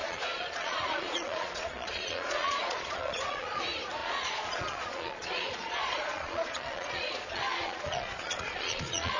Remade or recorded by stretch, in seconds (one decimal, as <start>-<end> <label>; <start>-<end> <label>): 0.0-3.6 remade; 3.6-4.0 recorded; 4.0-9.2 remade